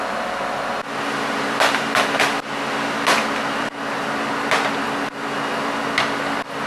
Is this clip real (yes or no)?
yes